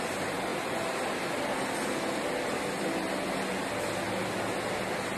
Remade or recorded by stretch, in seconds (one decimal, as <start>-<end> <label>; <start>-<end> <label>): 0.0-5.2 recorded